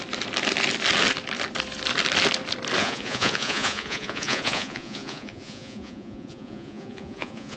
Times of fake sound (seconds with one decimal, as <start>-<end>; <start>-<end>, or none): 2.8-7.6